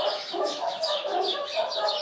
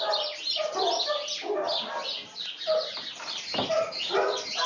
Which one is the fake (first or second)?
first